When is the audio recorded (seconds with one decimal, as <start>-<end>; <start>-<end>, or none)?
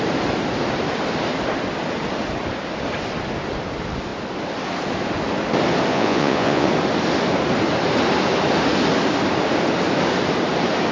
0.0-5.9; 6.7-10.9